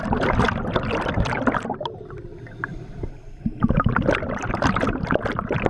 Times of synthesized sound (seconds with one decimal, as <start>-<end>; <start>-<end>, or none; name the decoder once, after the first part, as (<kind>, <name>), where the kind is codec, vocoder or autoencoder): 2.7-4.5 (vocoder, BigVGAN v2)